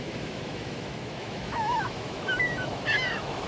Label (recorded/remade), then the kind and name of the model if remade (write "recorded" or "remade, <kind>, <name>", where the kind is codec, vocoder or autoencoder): remade, autoencoder, DAC-VAE